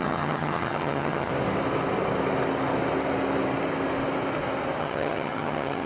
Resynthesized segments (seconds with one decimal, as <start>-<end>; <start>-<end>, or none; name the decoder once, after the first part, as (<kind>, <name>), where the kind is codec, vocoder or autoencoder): 0.0-1.3 (vocoder, HiFi-GAN); 4.8-5.9